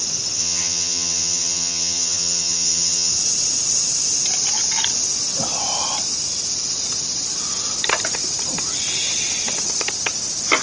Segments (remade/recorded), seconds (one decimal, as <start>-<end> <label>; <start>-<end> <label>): 0.0-0.4 recorded; 0.4-3.1 remade; 3.1-10.6 recorded